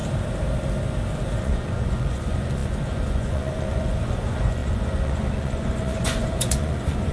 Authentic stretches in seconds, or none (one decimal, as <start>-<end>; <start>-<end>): 0.0-1.4